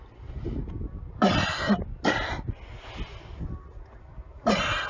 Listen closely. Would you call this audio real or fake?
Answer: real